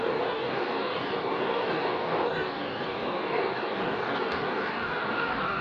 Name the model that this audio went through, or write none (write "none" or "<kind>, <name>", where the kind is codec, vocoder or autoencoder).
codec, DAC